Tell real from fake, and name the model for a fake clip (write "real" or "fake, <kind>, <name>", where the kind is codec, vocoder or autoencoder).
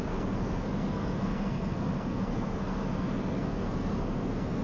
fake, codec, SNAC